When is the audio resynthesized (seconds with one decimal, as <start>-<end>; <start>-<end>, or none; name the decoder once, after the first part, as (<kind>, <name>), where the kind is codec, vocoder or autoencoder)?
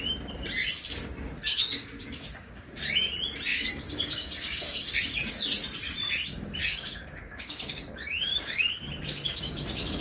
1.5-3.1 (codec, DAC); 3.5-5.3; 6.6-8.9